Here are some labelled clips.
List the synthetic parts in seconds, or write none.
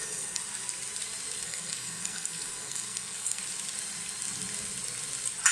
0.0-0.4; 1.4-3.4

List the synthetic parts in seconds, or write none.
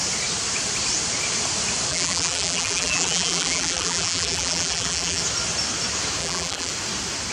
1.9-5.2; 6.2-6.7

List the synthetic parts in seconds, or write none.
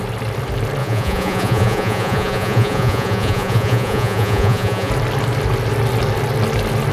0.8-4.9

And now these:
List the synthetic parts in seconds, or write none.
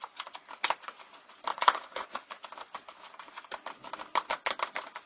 1.5-2.4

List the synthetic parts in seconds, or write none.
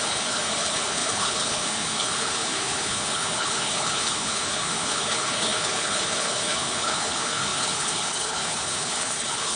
0.0-9.6